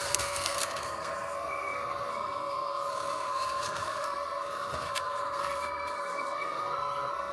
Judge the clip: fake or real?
fake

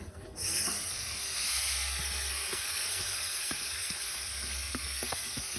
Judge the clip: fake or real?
fake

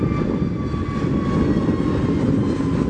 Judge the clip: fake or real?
real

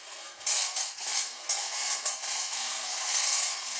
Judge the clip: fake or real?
fake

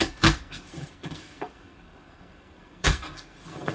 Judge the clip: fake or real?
fake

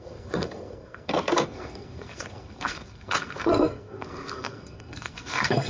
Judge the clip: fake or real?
fake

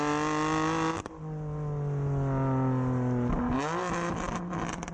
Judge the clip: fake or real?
real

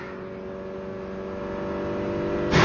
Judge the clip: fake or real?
real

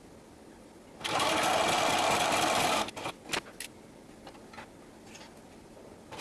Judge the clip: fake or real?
real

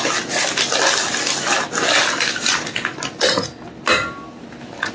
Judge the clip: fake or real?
real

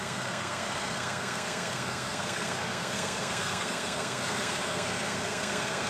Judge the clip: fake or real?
fake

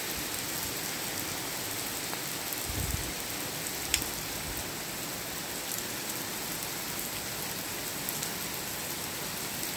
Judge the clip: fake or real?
real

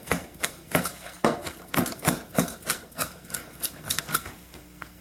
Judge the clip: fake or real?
fake